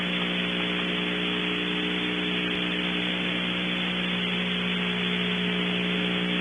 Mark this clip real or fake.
real